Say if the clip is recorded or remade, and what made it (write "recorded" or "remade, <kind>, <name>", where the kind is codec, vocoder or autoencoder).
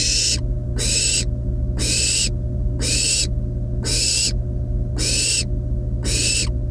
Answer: recorded